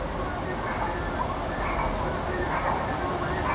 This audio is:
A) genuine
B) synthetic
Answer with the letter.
A